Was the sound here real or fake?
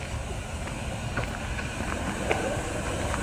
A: real